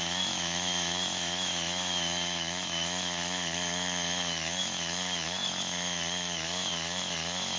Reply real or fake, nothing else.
fake